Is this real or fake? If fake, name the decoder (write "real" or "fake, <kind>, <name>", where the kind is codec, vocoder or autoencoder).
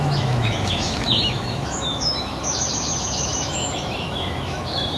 fake, autoencoder, DAC-VAE